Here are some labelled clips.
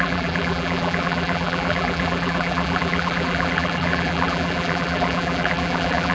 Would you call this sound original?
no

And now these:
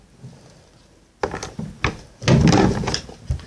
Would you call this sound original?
yes